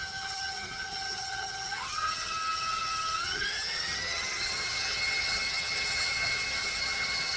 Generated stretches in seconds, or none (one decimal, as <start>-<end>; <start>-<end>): 0.0-7.4